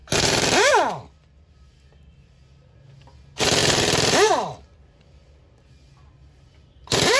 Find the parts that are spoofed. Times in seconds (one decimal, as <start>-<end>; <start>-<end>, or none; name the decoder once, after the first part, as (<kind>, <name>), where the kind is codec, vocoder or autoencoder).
3.6-5.3 (vocoder, BigVGAN v2); 6.2-7.2